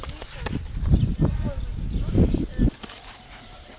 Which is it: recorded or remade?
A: recorded